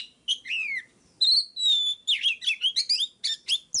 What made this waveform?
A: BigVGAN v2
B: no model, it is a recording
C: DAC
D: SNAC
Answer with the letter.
B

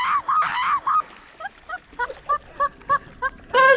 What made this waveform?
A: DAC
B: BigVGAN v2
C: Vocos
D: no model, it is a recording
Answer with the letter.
D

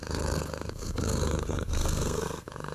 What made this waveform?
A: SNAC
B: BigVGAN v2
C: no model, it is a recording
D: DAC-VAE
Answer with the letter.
A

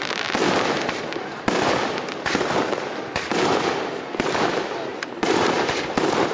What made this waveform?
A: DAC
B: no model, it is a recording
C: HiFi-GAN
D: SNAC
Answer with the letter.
B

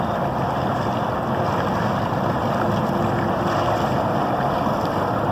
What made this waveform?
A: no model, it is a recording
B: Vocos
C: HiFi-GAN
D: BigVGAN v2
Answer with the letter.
A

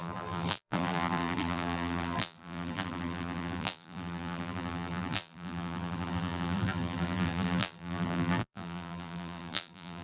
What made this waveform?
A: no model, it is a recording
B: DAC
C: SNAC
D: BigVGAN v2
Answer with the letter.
D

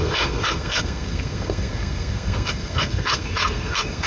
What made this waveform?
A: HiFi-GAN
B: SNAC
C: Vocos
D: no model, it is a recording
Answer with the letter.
B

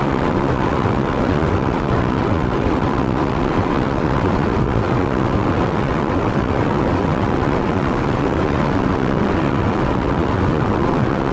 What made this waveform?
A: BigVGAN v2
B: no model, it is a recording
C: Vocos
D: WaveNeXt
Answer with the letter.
D